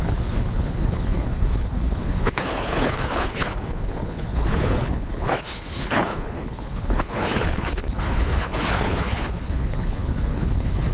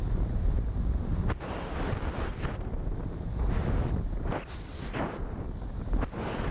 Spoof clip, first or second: first